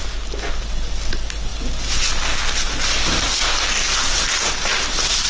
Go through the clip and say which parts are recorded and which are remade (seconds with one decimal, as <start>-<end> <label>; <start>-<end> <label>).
0.0-5.3 recorded